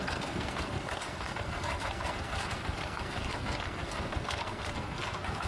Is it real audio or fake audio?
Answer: fake